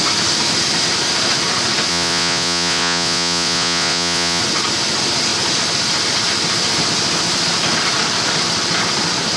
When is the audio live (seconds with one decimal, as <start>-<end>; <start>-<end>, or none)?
0.0-1.9; 4.4-9.4